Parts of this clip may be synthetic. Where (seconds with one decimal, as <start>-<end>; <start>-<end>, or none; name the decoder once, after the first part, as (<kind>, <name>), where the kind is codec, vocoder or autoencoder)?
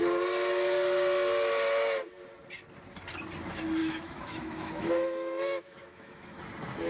3.8-6.4 (autoencoder, DAC-VAE)